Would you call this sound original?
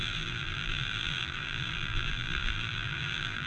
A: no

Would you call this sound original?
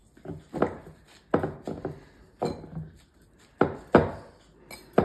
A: yes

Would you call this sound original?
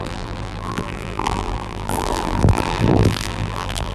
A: no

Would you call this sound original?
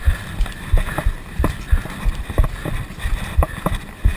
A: no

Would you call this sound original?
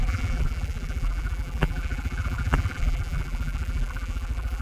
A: no